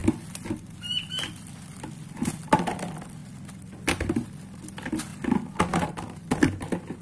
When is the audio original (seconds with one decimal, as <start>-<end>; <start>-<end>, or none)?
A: 0.0-7.0